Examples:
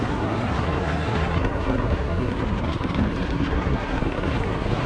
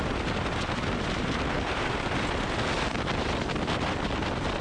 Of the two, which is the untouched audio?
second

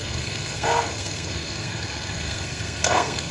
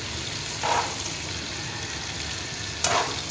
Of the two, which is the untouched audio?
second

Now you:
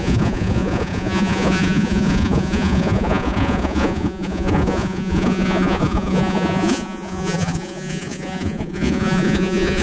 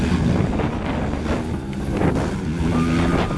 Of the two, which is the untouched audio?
second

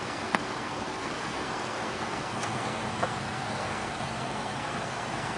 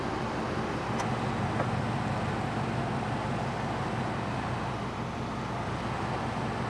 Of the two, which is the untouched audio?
second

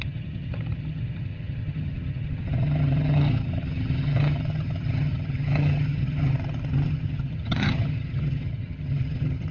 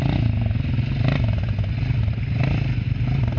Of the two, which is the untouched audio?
second